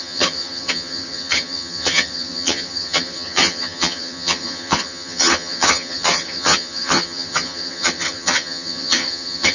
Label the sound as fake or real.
fake